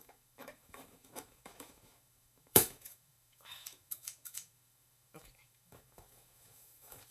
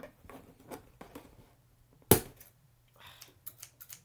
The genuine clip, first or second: second